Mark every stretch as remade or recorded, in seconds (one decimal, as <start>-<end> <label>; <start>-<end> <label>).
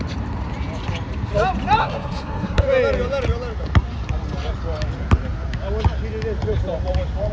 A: 0.0-1.8 recorded; 1.8-2.6 remade; 2.6-7.3 recorded